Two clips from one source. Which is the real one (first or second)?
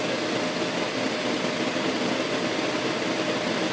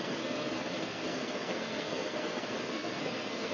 first